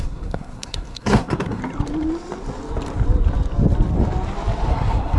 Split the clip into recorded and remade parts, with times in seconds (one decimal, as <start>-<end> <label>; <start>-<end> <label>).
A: 0.0-1.6 remade; 1.6-4.7 recorded; 4.7-5.2 remade